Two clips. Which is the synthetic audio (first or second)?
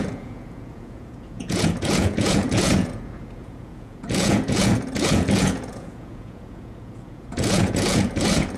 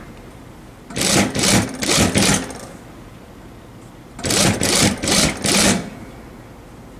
first